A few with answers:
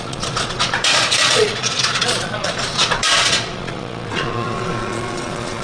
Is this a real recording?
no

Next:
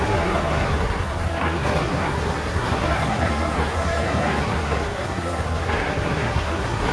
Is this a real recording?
no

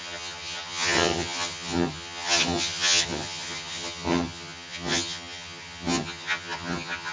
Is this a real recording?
no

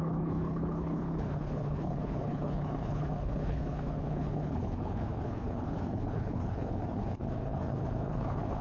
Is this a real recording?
no